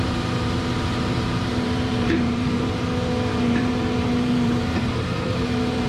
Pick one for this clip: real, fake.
fake